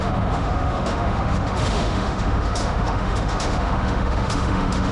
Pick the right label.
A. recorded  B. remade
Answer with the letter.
B